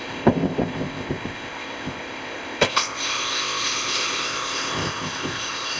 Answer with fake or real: fake